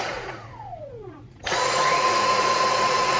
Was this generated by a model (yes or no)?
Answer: yes